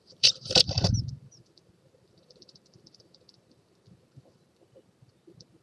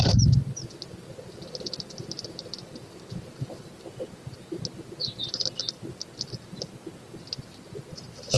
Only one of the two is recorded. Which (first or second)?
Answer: second